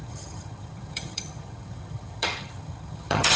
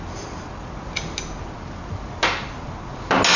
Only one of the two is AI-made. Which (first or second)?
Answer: first